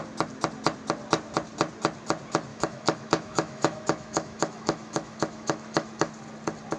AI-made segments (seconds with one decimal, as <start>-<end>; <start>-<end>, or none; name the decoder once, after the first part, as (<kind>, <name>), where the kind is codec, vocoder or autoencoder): 2.5-6.1 (autoencoder, DAC-VAE)